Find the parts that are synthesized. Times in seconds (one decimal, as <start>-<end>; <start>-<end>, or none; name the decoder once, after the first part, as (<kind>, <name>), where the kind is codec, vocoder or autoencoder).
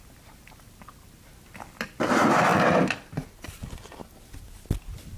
0.0-2.5 (vocoder, BigVGAN v2); 3.3-5.2